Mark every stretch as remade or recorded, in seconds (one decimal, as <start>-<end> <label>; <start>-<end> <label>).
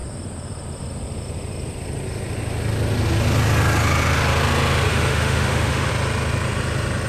0.0-4.9 recorded; 4.9-5.9 remade; 5.9-7.1 recorded